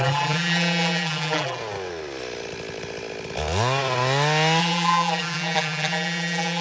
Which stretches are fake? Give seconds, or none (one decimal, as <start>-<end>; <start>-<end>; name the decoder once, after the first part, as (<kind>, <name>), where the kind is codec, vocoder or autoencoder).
0.0-1.6 (vocoder, BigVGAN v2); 4.6-6.6